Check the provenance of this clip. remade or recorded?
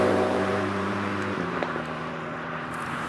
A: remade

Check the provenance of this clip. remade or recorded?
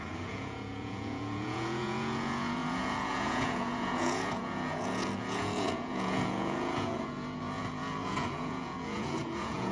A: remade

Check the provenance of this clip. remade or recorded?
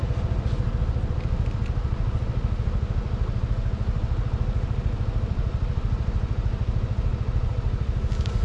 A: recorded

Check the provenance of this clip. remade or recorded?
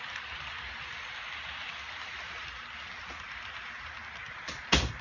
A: recorded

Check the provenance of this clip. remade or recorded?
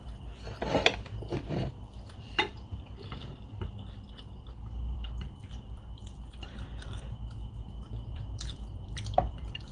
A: remade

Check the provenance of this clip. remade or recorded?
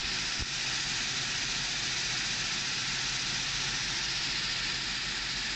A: recorded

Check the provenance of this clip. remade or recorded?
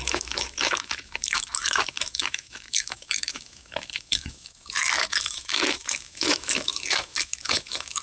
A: remade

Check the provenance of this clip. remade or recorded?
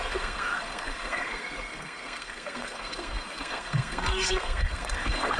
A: remade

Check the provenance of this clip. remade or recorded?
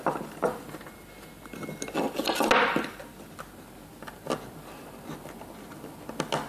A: recorded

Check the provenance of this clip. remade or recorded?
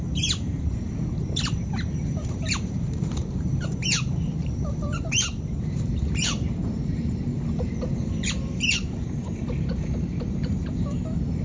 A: remade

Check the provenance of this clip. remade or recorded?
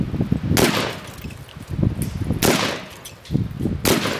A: recorded